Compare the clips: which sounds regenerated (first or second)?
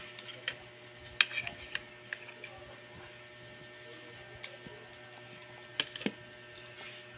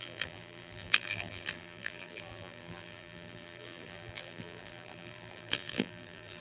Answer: second